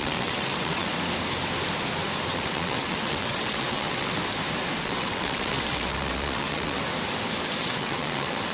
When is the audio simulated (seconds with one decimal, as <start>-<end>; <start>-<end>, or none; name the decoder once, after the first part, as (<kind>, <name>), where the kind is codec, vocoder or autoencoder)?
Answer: 0.0-0.9 (vocoder, WaveNeXt); 2.3-4.2; 4.8-6.8; 7.6-8.5